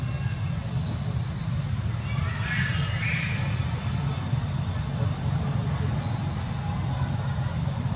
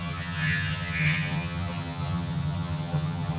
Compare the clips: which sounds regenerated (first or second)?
second